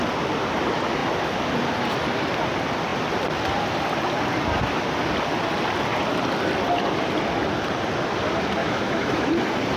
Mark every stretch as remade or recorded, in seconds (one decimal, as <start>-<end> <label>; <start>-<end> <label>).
0.0-8.6 recorded; 8.6-9.3 remade; 9.3-9.8 recorded